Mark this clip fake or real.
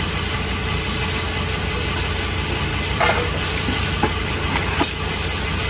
real